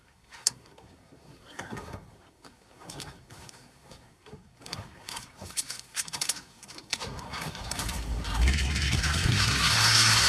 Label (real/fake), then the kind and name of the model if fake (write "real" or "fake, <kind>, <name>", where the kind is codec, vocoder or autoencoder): fake, codec, SNAC